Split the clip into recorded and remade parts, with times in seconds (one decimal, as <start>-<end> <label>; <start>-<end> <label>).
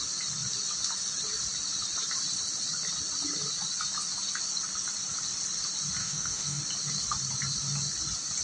0.0-6.0 recorded; 6.0-6.6 remade; 6.6-8.4 recorded